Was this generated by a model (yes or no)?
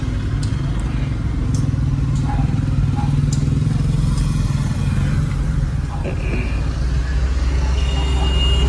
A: no